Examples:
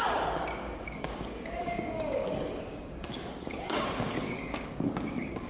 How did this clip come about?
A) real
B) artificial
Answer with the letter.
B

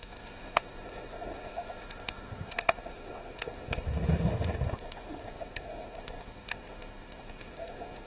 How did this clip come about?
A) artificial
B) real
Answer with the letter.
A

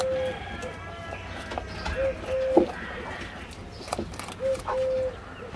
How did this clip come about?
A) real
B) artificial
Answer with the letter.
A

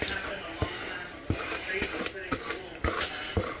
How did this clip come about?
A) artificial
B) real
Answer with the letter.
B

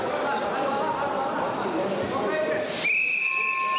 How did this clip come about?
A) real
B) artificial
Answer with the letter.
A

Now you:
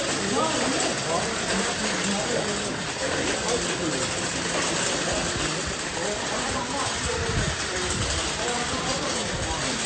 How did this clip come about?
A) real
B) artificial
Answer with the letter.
A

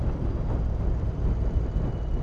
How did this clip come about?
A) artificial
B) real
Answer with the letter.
B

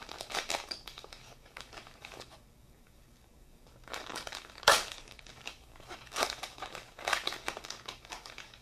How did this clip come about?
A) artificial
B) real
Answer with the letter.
A